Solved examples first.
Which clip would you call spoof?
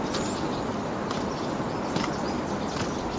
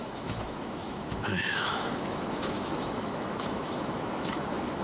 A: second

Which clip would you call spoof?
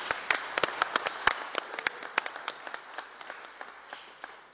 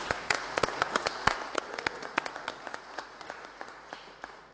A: second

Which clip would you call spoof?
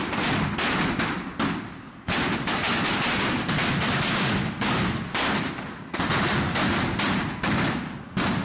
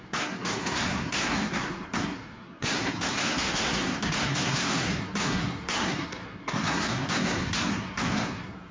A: second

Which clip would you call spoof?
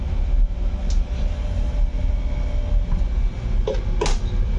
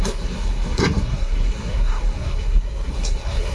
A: second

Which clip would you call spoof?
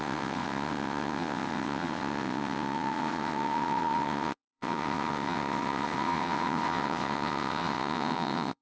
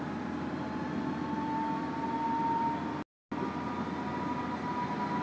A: first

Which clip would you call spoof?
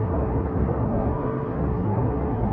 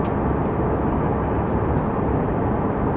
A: first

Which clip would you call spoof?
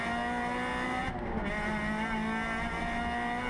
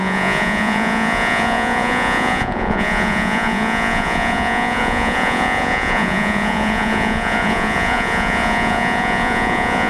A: second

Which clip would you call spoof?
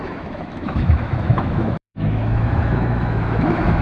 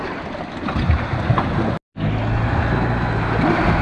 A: first